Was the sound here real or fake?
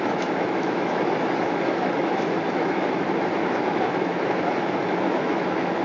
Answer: fake